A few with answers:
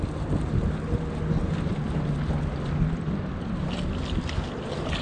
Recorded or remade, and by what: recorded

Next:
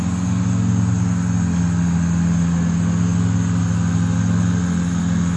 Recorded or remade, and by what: recorded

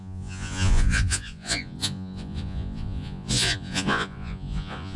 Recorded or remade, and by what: remade, vocoder, Vocos